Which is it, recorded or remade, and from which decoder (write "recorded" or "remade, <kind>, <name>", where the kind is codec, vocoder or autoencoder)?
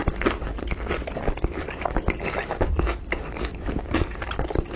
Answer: recorded